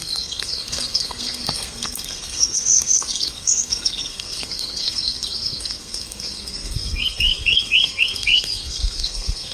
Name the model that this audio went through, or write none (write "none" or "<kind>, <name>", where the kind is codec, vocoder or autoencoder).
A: codec, SNAC